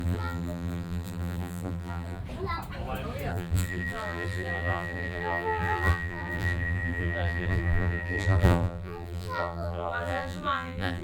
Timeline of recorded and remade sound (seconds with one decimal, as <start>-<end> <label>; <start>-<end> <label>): 0.0-2.2 remade; 2.2-3.3 recorded; 3.3-11.0 remade